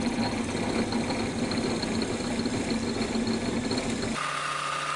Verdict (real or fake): real